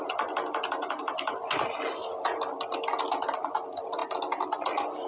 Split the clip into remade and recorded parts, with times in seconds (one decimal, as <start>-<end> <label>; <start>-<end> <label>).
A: 0.0-5.1 recorded